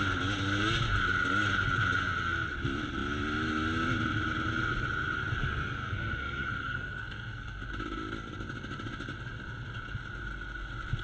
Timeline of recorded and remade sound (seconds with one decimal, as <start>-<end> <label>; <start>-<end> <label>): 0.0-5.8 recorded; 5.8-7.7 remade; 7.7-11.0 recorded